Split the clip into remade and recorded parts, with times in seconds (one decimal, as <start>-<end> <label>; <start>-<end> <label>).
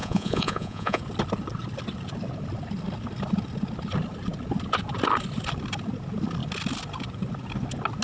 0.0-1.0 remade; 1.0-8.0 recorded